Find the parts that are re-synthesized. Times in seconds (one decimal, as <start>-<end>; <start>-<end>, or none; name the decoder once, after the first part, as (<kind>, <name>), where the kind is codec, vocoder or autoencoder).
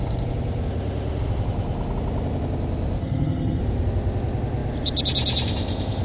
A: 3.0-3.6 (vocoder, HiFi-GAN)